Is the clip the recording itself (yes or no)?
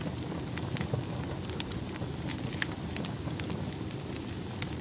yes